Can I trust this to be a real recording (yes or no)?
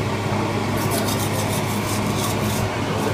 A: yes